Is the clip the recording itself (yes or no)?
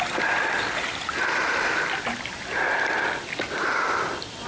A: yes